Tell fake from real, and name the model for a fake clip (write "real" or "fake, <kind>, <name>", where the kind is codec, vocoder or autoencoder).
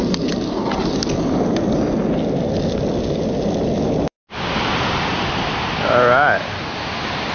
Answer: real